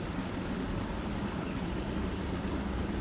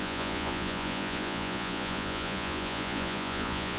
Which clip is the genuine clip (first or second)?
first